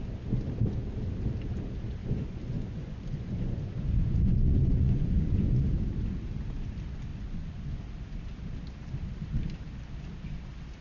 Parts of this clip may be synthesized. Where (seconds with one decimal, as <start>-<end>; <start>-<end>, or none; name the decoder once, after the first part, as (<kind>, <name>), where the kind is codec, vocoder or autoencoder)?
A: 2.0-5.8 (vocoder, Vocos); 7.1-7.8